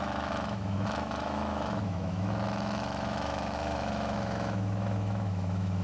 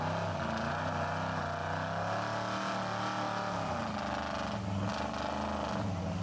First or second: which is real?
second